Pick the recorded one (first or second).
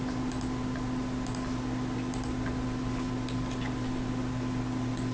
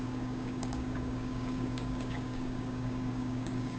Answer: first